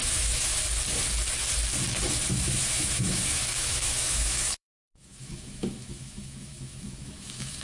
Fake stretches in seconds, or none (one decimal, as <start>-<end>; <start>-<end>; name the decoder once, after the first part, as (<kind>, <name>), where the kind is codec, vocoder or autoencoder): 0.0-0.5 (autoencoder, DAC-VAE); 2.3-7.6